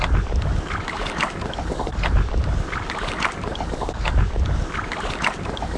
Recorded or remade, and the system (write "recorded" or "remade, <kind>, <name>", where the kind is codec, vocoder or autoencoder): remade, codec, DAC